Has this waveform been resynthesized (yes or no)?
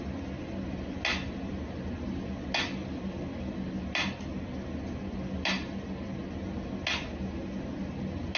no